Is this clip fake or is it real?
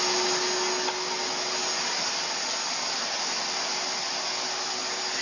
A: real